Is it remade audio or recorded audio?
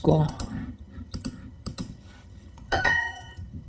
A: remade